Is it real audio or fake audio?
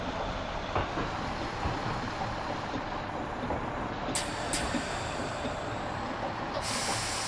real